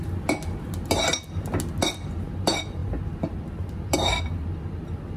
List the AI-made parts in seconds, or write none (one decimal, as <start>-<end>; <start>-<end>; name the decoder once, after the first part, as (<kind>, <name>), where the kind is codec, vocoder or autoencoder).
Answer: none